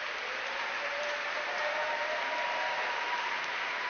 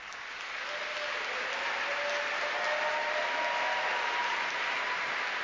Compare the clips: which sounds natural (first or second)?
second